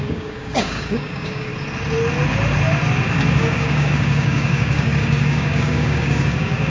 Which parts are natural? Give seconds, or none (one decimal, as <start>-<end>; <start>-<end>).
1.5-3.3